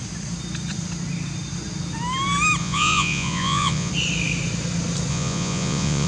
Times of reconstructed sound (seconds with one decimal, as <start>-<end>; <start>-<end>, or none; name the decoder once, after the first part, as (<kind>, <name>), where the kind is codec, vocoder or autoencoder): 2.6-3.9 (vocoder, Vocos); 5.1-6.1